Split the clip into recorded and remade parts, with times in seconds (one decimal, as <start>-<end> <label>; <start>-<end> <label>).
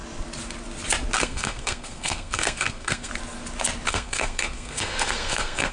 0.0-1.2 recorded; 1.2-3.1 remade; 3.1-3.9 recorded; 3.9-5.7 remade